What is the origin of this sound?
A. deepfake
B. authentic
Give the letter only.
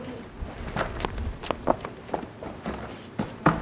B